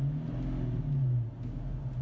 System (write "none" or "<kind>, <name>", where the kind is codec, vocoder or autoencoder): none